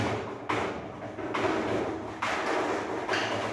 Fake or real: real